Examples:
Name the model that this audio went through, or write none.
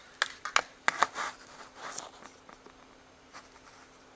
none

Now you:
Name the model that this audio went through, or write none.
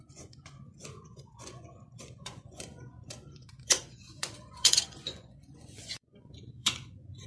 vocoder, Vocos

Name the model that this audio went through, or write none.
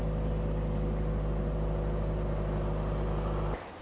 none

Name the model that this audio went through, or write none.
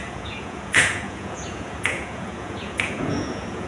vocoder, Vocos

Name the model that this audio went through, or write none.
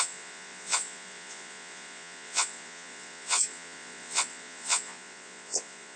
vocoder, Vocos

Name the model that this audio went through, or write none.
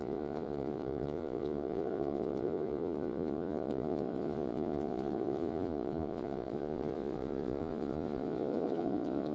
vocoder, Vocos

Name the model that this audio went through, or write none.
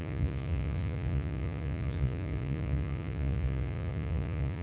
vocoder, Vocos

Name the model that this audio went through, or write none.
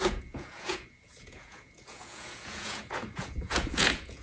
vocoder, Vocos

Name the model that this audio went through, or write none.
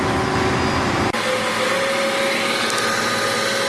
none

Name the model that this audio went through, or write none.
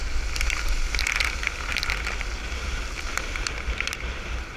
none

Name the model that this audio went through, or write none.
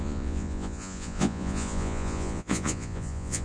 vocoder, Vocos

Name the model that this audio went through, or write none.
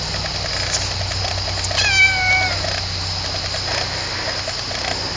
none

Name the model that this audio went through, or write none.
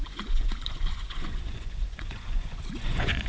vocoder, Vocos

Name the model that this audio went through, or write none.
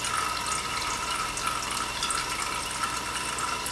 none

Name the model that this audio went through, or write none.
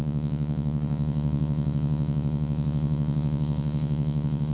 vocoder, Vocos